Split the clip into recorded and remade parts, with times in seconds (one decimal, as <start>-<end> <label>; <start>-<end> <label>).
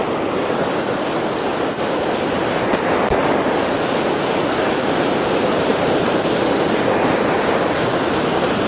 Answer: 0.0-8.7 recorded